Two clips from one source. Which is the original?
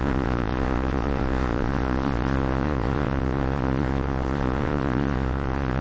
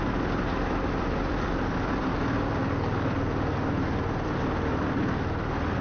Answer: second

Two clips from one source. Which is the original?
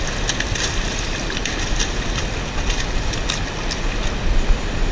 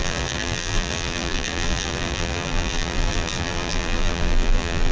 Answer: first